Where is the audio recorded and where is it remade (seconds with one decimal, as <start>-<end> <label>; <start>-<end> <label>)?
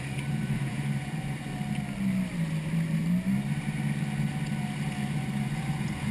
0.0-1.5 remade; 1.5-5.2 recorded; 5.2-6.1 remade